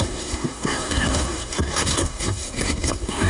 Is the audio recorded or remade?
remade